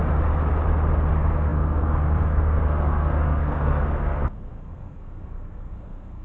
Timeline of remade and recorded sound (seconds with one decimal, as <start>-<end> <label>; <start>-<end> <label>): 0.0-1.1 recorded; 1.1-6.2 remade